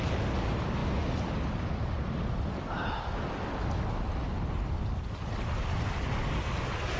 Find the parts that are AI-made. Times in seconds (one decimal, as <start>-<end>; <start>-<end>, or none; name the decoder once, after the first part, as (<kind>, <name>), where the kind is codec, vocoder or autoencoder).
none